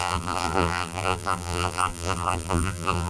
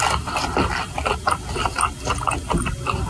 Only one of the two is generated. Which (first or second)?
first